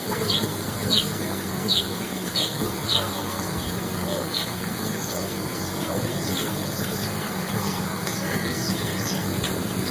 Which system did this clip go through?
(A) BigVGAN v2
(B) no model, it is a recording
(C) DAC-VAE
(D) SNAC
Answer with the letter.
D